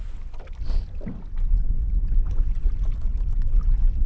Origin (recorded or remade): recorded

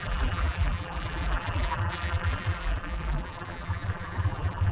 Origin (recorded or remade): remade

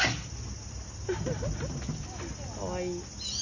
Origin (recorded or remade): recorded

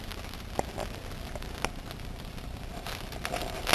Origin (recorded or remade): recorded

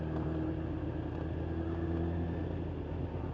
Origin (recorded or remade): recorded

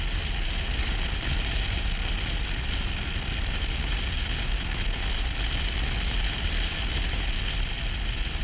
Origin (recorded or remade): recorded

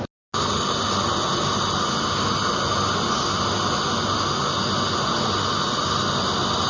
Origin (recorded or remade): recorded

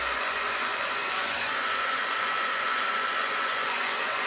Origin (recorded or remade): remade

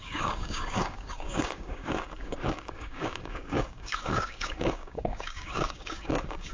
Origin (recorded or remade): remade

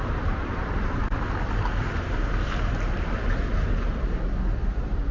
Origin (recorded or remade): remade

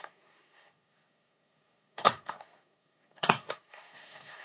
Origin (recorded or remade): remade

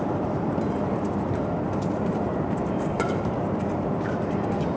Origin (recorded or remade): remade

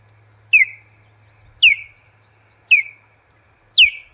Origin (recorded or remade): recorded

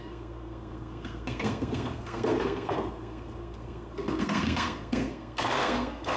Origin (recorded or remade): remade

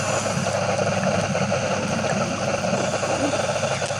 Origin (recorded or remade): recorded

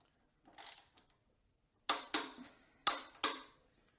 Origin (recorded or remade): recorded